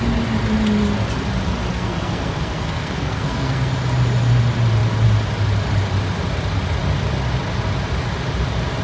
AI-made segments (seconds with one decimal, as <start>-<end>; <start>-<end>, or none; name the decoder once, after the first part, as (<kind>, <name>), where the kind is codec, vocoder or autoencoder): 1.7-3.7 (codec, SNAC)